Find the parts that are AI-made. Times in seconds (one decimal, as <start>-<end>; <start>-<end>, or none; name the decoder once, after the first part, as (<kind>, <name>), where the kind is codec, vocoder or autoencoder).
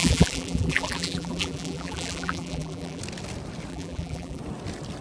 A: 0.0-3.0 (vocoder, BigVGAN v2); 3.7-4.4